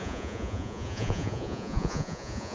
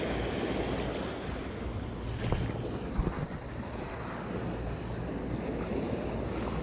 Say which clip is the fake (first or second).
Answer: first